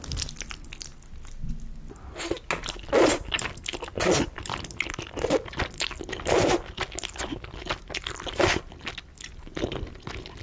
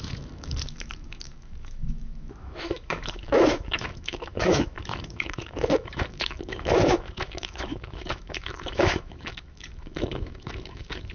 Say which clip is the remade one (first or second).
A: second